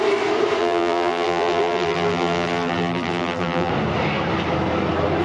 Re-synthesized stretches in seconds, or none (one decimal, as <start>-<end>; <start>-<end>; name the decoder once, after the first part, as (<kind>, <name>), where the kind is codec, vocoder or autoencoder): 0.6-3.7 (vocoder, BigVGAN v2)

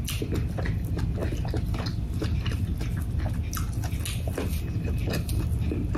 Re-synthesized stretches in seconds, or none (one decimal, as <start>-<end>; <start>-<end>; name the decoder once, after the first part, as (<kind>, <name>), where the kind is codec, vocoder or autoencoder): none

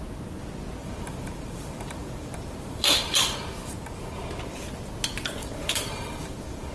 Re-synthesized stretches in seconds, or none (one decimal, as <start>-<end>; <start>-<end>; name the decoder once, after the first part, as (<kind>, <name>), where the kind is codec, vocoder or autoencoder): 0.8-3.2 (vocoder, BigVGAN v2); 5.4-6.7

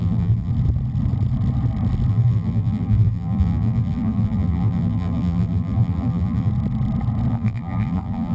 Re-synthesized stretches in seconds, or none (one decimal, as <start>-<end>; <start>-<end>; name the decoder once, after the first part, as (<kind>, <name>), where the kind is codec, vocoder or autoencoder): 0.0-0.5 (vocoder, BigVGAN v2); 2.1-6.5; 7.3-8.3

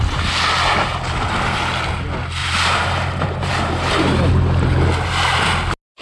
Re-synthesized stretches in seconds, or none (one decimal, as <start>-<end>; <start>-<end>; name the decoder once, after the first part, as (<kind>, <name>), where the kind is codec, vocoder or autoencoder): 2.4-4.3 (vocoder, BigVGAN v2)